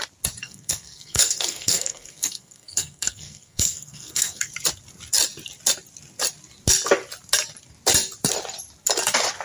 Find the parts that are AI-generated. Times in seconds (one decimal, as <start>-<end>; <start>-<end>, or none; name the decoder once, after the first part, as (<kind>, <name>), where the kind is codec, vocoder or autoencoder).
0.4-4.5 (codec, SNAC)